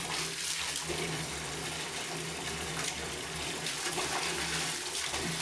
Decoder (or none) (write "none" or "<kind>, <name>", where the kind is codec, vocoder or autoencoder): vocoder, BigVGAN v2